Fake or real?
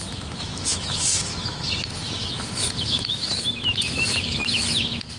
fake